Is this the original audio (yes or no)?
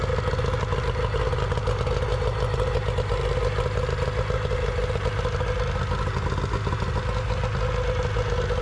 yes